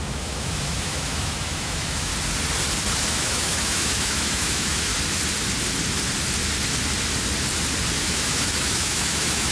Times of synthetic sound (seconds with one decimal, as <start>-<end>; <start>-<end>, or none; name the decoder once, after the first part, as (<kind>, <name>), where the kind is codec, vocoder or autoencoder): 0.0-2.1 (autoencoder, DAC-VAE); 3.1-4.9; 8.0-9.5